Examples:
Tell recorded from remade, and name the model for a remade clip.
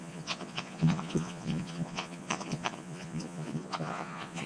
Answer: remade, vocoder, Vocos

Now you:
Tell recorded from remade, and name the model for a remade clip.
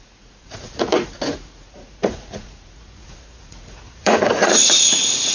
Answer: remade, vocoder, Vocos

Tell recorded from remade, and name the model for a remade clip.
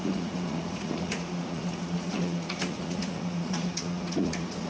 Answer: remade, vocoder, Vocos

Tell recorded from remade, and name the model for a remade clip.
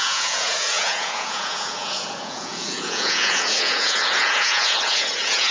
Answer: remade, vocoder, Vocos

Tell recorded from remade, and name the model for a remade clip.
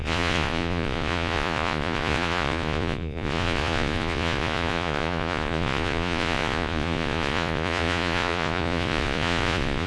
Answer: remade, vocoder, Vocos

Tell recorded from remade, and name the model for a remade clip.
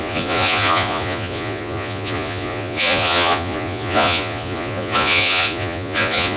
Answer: remade, vocoder, Vocos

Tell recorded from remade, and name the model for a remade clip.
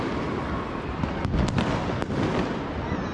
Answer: recorded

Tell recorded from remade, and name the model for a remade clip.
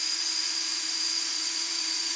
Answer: remade, vocoder, Vocos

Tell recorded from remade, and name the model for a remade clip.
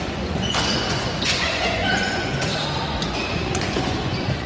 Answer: remade, vocoder, Vocos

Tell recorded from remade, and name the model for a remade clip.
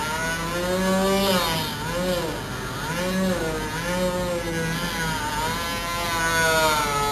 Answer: recorded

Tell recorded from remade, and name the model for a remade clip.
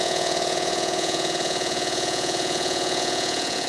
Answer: remade, vocoder, Vocos